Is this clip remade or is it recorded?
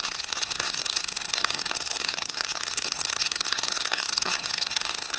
remade